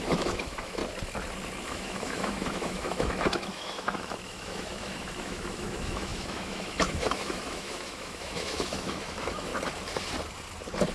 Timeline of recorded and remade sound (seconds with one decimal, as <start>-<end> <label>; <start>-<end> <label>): 0.0-0.8 remade; 0.8-1.7 recorded; 1.7-9.5 remade; 9.5-10.9 recorded